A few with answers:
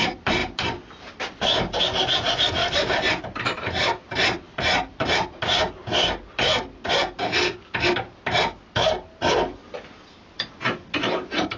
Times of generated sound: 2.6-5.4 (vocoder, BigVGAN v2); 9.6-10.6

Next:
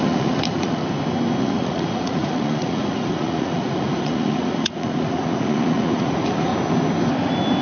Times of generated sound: 0.0-0.8 (vocoder, Vocos); 1.4-6.5